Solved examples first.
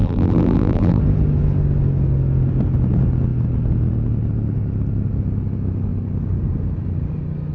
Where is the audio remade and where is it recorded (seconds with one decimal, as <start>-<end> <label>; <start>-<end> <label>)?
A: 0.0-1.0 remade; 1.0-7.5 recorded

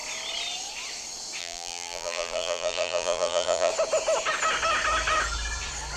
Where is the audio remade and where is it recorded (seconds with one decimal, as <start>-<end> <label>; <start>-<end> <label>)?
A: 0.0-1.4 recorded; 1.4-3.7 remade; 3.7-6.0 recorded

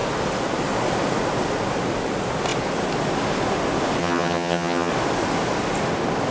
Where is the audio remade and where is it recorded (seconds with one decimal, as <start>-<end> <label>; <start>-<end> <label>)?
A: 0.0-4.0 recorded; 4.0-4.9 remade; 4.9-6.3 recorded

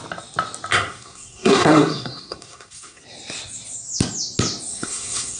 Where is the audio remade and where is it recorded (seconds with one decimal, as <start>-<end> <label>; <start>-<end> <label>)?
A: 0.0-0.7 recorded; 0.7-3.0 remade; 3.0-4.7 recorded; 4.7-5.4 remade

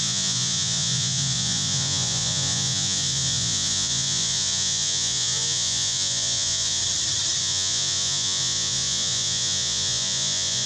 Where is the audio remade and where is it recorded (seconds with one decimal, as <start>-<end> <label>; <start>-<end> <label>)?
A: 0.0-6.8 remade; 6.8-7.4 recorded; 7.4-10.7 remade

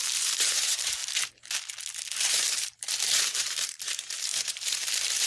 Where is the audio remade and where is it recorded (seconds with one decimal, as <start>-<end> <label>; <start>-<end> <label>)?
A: 0.0-1.0 remade; 1.0-2.3 recorded; 2.3-5.3 remade

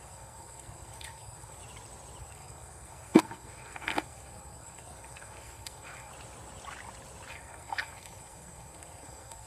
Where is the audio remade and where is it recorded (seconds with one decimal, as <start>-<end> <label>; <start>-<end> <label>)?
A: 0.0-1.6 remade; 1.6-2.2 recorded; 2.2-6.1 remade; 6.1-7.3 recorded; 7.3-9.5 remade